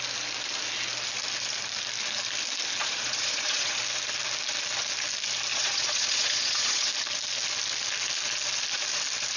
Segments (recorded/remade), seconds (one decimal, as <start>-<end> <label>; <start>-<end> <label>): 0.0-2.8 recorded; 2.8-3.8 remade; 3.8-5.5 recorded; 5.5-6.9 remade; 6.9-9.4 recorded